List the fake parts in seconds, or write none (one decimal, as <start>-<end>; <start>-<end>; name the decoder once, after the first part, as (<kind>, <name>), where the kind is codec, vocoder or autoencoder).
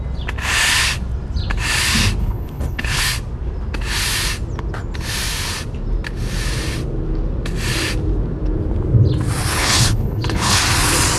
2.2-3.0 (codec, HILCodec); 9.5-10.6